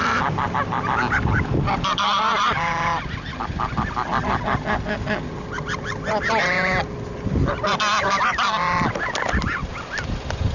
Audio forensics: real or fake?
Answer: real